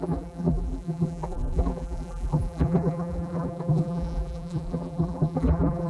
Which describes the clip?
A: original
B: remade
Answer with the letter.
B